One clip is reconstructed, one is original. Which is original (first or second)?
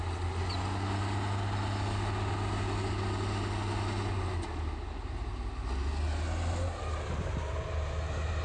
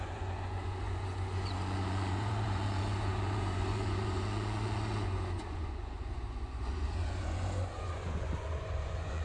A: first